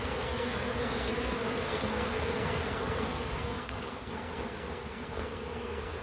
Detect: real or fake fake